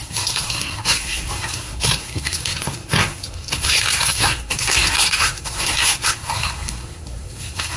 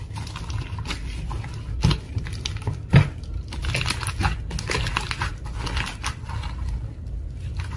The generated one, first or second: first